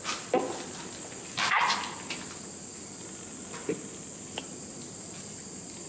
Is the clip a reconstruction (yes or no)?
no